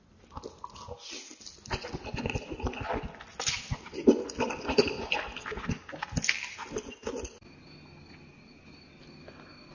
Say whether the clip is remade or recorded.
recorded